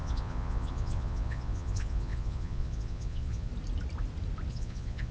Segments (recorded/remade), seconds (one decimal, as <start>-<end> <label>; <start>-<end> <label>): 0.0-3.5 remade; 3.5-4.5 recorded; 4.5-5.1 remade